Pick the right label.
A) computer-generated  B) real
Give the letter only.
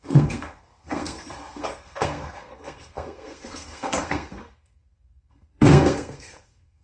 A